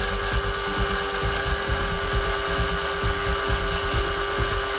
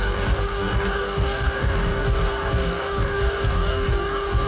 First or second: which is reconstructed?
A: second